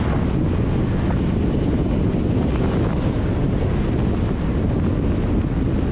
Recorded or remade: recorded